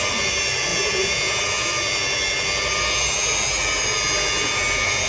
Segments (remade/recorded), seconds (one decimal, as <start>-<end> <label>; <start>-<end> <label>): 0.0-0.7 recorded; 0.7-1.4 remade; 1.4-5.1 recorded